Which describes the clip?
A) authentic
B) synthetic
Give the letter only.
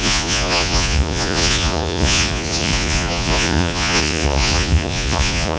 B